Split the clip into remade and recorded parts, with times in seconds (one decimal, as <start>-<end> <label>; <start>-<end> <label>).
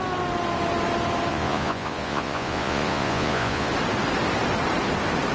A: 0.0-1.3 recorded; 1.3-3.7 remade; 3.7-5.3 recorded